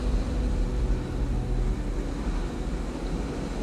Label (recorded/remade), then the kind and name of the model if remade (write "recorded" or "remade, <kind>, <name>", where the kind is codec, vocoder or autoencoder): recorded